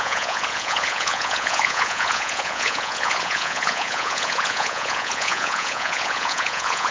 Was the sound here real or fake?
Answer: fake